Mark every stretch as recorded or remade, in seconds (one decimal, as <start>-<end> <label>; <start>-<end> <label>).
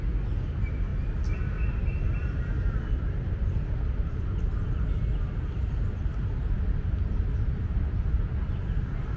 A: 0.0-9.2 recorded